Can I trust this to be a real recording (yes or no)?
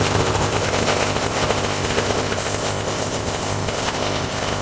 no